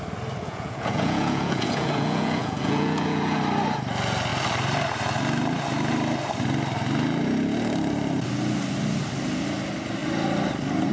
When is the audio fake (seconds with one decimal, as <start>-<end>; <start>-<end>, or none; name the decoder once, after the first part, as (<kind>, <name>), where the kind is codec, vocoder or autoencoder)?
0.4-3.4 (vocoder, Vocos)